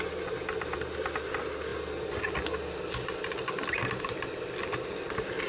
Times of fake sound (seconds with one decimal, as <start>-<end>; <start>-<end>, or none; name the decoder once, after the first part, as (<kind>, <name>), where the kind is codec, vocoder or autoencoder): none